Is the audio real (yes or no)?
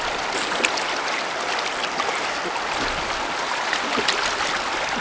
yes